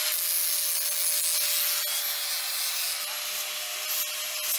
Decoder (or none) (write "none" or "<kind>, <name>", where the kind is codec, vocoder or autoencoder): none